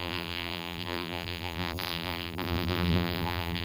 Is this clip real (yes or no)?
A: no